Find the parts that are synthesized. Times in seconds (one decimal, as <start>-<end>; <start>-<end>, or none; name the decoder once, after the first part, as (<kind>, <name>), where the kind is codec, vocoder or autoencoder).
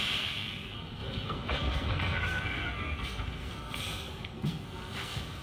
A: 0.0-5.4 (codec, SNAC)